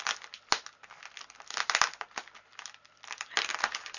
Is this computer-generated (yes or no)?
no